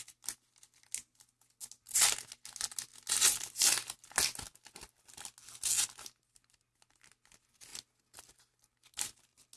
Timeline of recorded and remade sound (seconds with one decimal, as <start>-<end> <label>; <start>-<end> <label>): 0.0-9.6 recorded